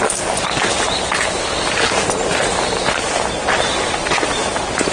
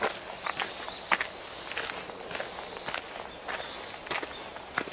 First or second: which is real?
second